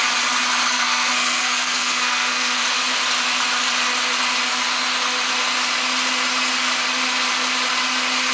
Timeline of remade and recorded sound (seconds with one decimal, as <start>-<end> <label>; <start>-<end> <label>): 0.0-0.7 recorded; 0.7-2.6 remade; 2.6-8.3 recorded